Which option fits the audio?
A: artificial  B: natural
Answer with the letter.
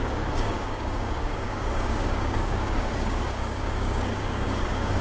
A